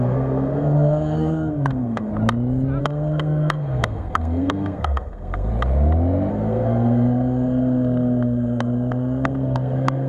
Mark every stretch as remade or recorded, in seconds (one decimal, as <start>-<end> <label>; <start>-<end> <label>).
0.0-2.1 remade; 2.1-2.8 recorded; 2.8-5.5 remade; 5.5-6.3 recorded; 6.3-10.1 remade